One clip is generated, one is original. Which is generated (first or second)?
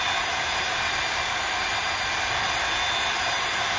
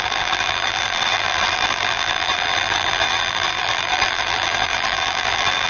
second